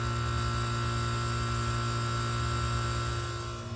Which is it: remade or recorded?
recorded